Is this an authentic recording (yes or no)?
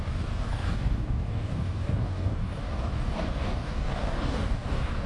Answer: no